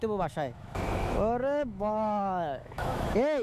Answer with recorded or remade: remade